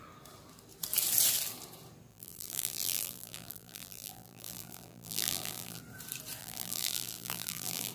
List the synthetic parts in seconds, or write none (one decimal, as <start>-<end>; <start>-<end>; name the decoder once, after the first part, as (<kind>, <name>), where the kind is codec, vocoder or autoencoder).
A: 2.1-5.8 (vocoder, BigVGAN v2); 6.4-7.9